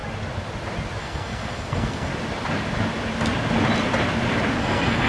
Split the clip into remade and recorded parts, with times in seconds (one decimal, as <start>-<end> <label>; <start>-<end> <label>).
0.0-1.0 recorded; 1.0-2.1 remade; 2.1-4.6 recorded; 4.6-5.1 remade